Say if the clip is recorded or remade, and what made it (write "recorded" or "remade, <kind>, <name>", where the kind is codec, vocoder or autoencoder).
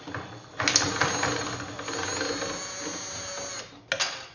recorded